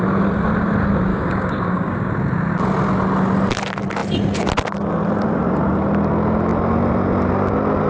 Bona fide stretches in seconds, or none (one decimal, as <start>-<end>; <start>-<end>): 0.0-1.1; 2.1-7.9